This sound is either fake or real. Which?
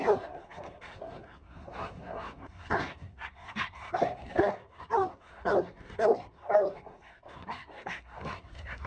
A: fake